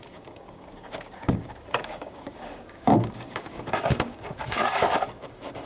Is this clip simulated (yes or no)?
yes